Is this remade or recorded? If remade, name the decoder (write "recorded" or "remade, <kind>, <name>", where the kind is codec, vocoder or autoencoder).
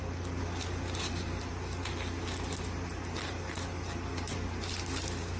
recorded